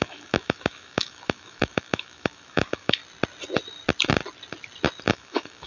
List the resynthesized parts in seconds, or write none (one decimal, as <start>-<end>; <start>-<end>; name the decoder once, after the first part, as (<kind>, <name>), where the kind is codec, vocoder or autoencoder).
0.0-3.0 (autoencoder, DAC-VAE); 5.1-5.7